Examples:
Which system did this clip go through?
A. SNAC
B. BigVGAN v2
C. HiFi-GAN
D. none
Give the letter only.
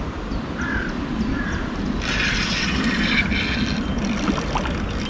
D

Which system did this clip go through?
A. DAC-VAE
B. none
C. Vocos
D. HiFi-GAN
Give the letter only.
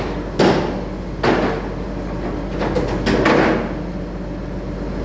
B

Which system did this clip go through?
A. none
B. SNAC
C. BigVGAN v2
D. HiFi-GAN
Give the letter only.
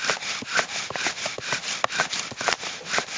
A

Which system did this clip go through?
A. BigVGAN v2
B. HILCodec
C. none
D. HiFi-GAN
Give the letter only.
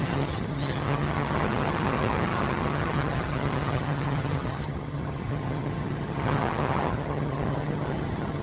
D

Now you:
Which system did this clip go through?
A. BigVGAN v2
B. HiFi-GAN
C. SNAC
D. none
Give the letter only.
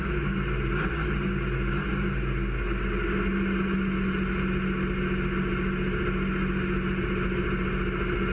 D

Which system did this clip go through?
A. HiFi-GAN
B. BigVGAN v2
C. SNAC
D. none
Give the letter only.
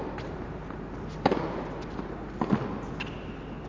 D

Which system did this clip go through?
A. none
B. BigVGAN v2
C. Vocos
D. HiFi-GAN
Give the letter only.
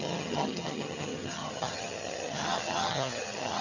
D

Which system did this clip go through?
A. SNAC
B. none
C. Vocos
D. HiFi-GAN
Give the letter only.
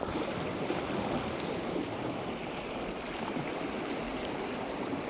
B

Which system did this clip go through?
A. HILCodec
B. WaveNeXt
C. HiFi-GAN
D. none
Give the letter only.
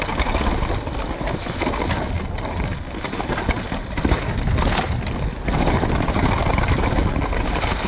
D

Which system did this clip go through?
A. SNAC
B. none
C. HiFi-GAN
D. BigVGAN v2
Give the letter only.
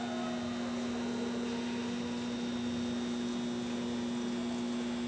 B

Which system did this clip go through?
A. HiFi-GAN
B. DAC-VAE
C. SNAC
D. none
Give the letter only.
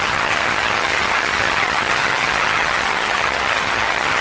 A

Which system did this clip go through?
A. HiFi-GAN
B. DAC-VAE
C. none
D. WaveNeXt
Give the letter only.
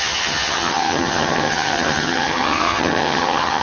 A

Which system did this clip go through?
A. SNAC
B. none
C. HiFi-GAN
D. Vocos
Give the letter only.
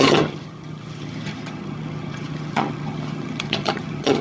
C